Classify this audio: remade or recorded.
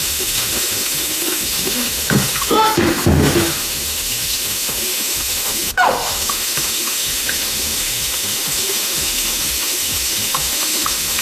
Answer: remade